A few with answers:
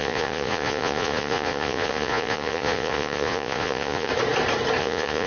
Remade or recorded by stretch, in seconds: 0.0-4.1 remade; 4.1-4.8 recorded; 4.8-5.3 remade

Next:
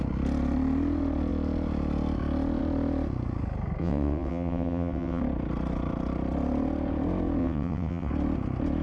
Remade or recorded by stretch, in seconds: 0.0-3.8 recorded; 3.8-5.2 remade; 5.2-7.4 recorded; 7.4-8.1 remade; 8.1-8.8 recorded